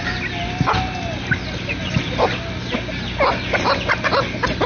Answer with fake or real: real